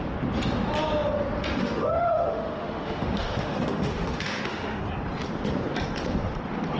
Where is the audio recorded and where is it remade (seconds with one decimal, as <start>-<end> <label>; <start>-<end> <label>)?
0.0-1.6 recorded; 1.6-4.8 remade; 4.8-6.8 recorded